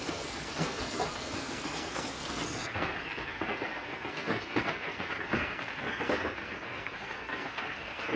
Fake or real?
fake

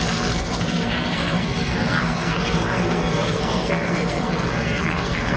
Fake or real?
fake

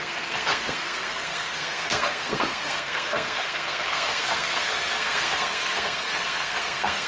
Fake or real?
fake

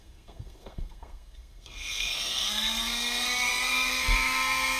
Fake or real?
fake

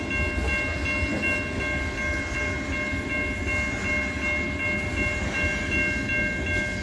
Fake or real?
real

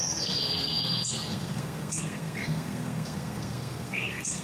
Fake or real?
fake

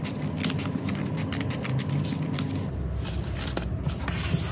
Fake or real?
real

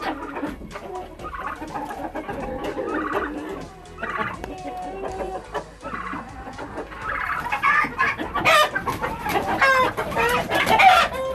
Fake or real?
real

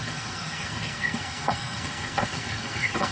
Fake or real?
fake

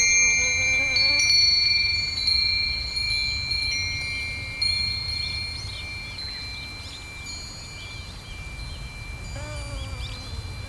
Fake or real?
real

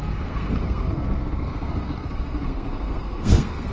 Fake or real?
fake